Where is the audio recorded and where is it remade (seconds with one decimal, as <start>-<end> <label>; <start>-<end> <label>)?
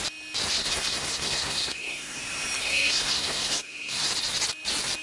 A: 0.0-0.6 recorded; 0.6-2.2 remade; 2.2-2.6 recorded; 2.6-4.1 remade; 4.1-5.0 recorded